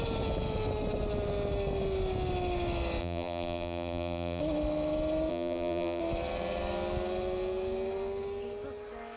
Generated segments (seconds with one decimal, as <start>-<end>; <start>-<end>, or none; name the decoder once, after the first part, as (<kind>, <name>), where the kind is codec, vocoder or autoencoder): 3.0-4.4 (vocoder, BigVGAN v2); 5.3-6.0